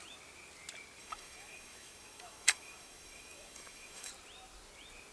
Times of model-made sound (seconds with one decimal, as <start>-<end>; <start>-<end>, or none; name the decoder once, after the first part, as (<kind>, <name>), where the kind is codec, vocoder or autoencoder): 1.0-4.1 (autoencoder, DAC-VAE)